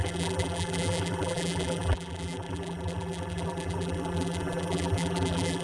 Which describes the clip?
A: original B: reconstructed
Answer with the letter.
B